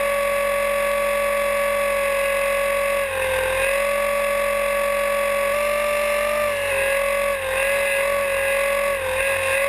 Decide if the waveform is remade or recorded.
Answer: recorded